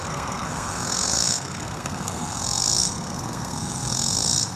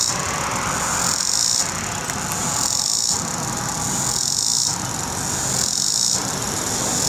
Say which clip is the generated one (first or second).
first